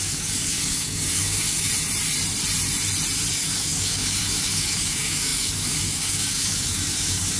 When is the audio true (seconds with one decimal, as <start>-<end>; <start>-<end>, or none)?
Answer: 1.7-3.3